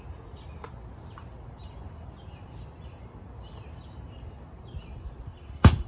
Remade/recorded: recorded